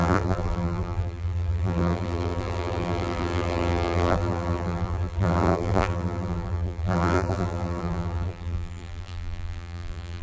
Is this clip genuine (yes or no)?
no